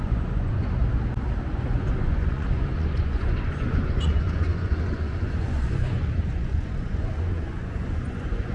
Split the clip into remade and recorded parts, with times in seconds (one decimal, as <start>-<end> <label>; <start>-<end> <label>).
0.0-0.8 remade; 0.8-1.5 recorded; 1.5-8.5 remade